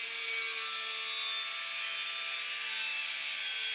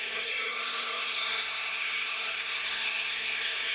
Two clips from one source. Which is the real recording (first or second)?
first